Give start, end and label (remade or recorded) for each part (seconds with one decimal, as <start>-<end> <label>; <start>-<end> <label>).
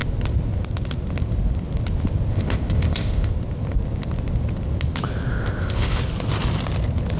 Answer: 0.0-2.3 recorded; 2.3-3.3 remade; 3.3-5.3 recorded; 5.3-6.0 remade; 6.0-7.2 recorded